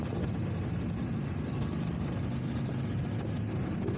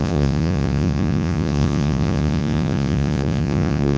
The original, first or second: first